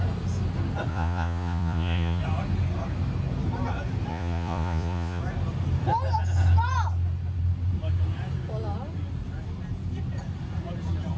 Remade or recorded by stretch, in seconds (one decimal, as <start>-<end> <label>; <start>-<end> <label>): 0.0-0.9 recorded; 0.9-2.2 remade; 2.2-4.1 recorded; 4.1-5.2 remade; 5.2-11.2 recorded